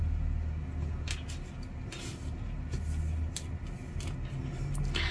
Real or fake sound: real